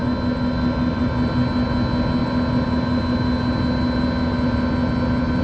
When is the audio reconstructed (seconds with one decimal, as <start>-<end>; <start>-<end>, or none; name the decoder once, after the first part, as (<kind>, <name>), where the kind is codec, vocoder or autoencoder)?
none